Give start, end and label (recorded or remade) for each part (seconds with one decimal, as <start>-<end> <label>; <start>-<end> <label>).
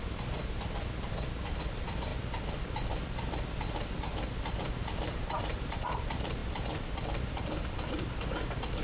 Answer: 0.0-8.8 recorded